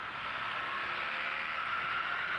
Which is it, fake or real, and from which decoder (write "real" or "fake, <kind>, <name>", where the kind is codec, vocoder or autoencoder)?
real